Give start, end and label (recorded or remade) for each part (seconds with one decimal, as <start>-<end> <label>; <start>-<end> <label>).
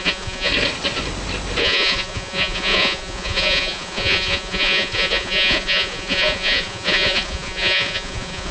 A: 0.0-0.5 remade; 0.5-1.6 recorded; 1.6-8.5 remade